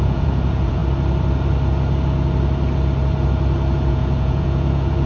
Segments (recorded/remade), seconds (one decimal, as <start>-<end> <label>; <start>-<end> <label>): 0.0-0.8 remade; 0.8-3.9 recorded; 3.9-5.1 remade